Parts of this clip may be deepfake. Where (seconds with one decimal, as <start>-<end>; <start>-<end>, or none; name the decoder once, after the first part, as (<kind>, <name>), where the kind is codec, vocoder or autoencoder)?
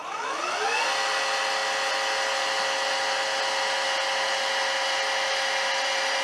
none